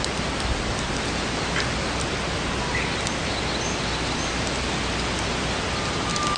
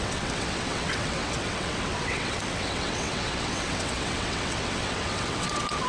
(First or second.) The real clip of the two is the first